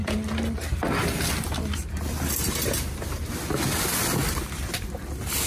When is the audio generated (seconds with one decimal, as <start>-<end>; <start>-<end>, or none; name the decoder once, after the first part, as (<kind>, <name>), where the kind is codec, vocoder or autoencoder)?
4.2-5.0 (vocoder, BigVGAN v2)